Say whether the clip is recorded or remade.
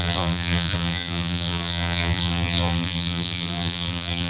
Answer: remade